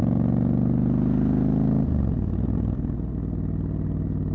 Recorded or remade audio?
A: recorded